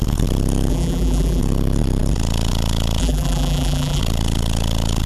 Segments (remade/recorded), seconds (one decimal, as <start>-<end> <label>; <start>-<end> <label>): 0.0-0.7 recorded; 0.7-1.4 remade; 1.4-3.0 recorded; 3.0-4.0 remade; 4.0-5.1 recorded